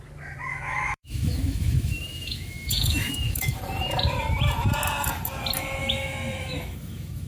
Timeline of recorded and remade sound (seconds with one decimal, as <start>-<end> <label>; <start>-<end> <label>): 0.0-0.5 recorded; 0.5-3.6 remade; 3.6-5.8 recorded; 5.8-7.3 remade